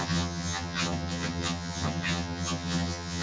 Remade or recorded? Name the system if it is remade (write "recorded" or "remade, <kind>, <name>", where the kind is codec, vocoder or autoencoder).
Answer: remade, vocoder, HiFi-GAN